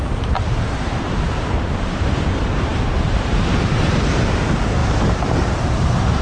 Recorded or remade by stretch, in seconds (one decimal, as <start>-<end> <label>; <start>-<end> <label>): 0.0-6.2 remade